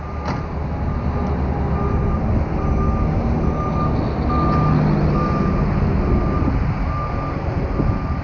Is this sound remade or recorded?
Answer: recorded